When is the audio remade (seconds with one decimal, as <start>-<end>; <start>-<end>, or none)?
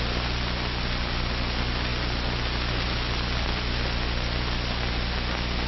none